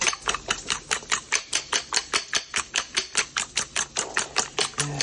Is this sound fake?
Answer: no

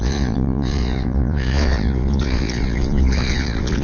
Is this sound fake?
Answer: yes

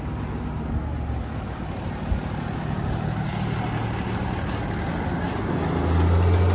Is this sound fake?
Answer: no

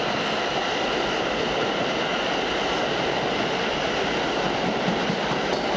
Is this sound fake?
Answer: no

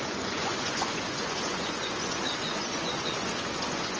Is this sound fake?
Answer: yes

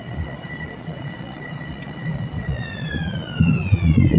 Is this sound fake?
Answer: yes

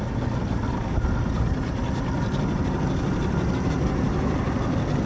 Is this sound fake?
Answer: no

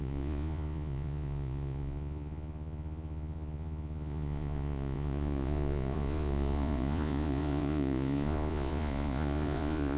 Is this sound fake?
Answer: yes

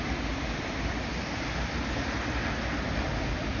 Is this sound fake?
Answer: no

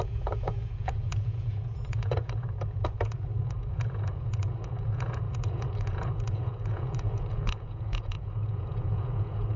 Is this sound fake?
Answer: yes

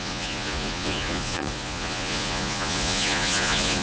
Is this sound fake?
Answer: yes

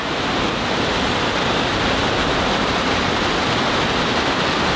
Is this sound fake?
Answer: no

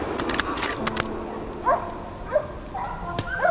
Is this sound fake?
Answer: no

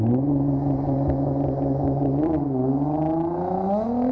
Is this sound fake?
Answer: no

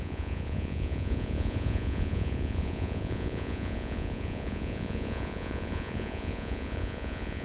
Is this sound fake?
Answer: yes